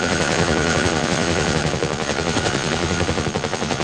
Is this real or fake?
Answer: fake